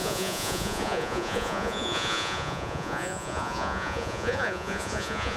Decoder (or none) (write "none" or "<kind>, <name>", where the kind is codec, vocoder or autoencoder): vocoder, Vocos